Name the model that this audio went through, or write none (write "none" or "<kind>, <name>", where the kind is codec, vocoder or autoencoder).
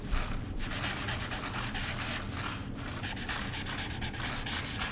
none